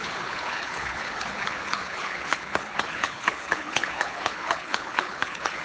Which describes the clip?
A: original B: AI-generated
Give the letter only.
B